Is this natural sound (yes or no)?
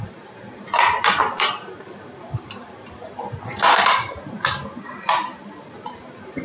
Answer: no